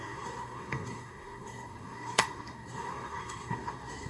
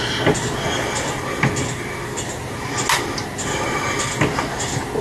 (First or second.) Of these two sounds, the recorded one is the second